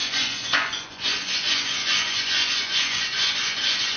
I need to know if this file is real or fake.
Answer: fake